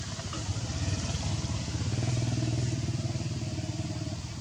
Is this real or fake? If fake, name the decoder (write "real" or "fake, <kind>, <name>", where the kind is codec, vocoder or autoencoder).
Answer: real